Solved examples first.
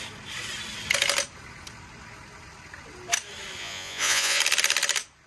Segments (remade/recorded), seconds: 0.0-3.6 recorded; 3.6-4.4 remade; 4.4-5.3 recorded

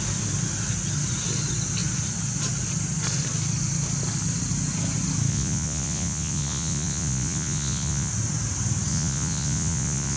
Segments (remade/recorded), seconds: 0.0-5.3 recorded; 5.3-8.1 remade; 8.1-8.9 recorded; 8.9-10.2 remade

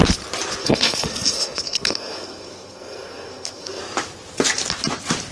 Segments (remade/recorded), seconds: 0.0-0.6 recorded; 0.6-3.8 remade; 3.8-5.3 recorded

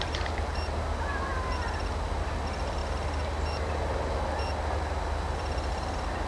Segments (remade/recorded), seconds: 0.0-6.3 recorded

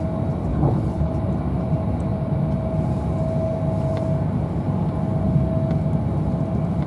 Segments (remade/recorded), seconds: 0.0-0.5 recorded; 0.5-1.1 remade; 1.1-6.9 recorded